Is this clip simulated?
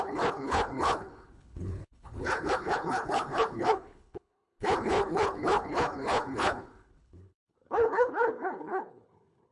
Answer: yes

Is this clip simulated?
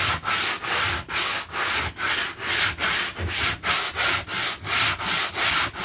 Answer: no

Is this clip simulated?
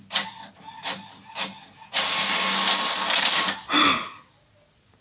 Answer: no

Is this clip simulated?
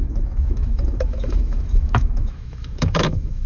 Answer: yes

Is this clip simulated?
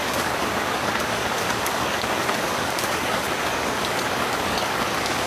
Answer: yes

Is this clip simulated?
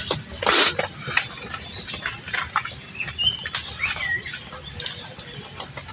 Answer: no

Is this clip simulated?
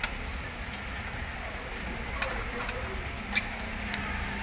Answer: no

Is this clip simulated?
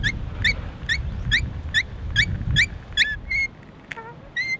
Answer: no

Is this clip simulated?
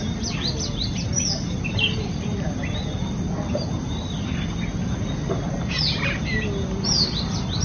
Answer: no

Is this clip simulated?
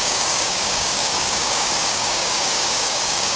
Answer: yes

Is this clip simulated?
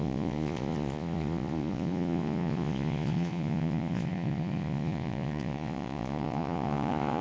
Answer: yes